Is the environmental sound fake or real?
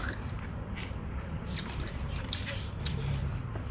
fake